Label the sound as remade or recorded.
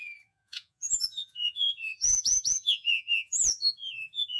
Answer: remade